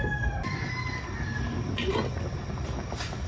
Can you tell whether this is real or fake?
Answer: real